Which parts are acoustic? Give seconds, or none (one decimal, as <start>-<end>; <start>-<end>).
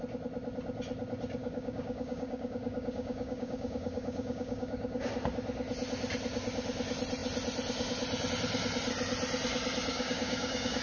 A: 0.0-1.4; 5.0-9.9